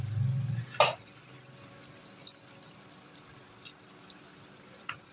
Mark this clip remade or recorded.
recorded